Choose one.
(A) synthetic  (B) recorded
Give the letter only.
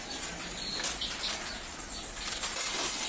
B